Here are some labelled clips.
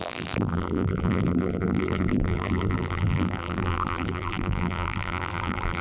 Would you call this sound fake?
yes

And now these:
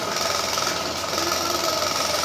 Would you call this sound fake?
no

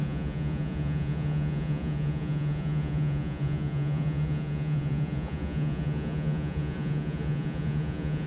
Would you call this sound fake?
yes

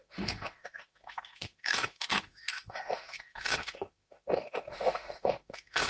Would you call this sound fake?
yes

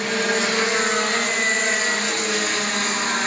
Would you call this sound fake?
no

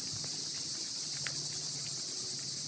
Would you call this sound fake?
no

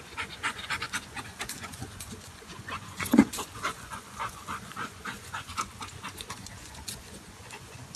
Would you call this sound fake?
yes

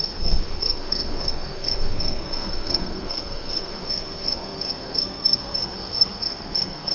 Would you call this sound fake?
yes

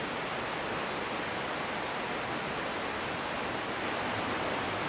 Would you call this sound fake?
no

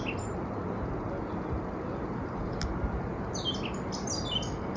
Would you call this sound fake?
no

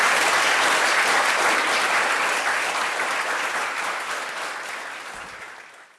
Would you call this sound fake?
yes